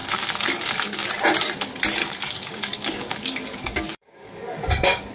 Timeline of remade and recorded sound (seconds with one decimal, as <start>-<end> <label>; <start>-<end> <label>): 0.0-1.1 remade; 1.1-2.0 recorded; 2.0-5.1 remade